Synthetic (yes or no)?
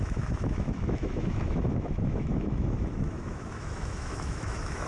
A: yes